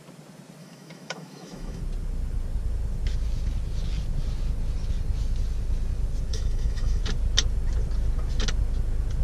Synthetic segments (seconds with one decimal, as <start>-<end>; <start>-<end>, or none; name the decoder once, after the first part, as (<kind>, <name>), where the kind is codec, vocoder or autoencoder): 0.6-1.8 (autoencoder, DAC-VAE); 6.3-7.0